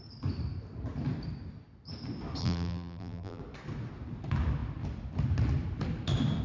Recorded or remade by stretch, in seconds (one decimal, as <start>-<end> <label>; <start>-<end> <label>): 0.0-2.4 recorded; 2.4-3.4 remade; 3.4-6.4 recorded